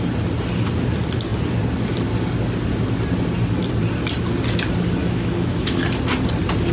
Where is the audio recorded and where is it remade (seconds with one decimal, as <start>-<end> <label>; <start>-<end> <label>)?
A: 0.0-5.0 recorded; 5.0-5.8 remade; 5.8-6.7 recorded

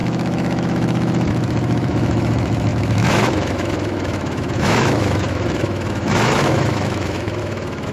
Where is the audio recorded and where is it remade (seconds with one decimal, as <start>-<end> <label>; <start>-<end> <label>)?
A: 0.0-7.9 remade

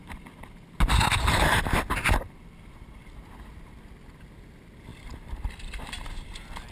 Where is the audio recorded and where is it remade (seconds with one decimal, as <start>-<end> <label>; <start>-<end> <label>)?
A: 0.0-6.7 recorded